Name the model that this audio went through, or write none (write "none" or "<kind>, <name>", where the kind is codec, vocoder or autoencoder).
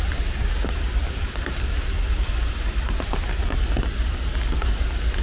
none